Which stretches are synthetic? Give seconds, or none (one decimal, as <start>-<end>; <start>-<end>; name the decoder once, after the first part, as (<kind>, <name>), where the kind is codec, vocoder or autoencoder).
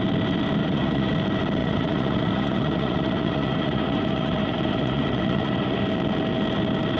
0.6-1.1 (vocoder, Vocos); 1.6-5.8